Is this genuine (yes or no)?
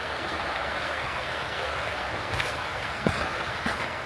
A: no